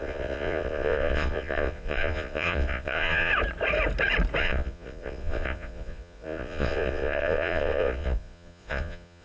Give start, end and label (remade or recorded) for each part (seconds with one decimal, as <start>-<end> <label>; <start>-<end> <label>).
0.0-3.3 remade; 3.3-4.4 recorded; 4.4-9.2 remade